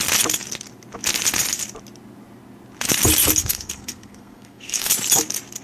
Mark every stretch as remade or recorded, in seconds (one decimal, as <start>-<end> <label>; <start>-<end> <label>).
0.0-3.4 recorded; 3.4-4.9 remade; 4.9-5.6 recorded